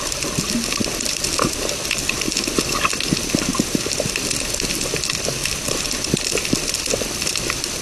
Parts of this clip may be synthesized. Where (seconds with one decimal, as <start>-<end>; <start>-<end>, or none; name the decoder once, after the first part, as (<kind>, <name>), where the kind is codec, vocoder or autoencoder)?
none